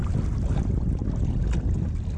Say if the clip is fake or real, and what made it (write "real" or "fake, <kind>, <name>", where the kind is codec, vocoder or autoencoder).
real